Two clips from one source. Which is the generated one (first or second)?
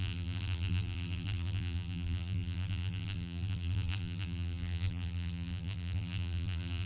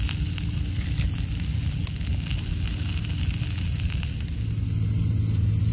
first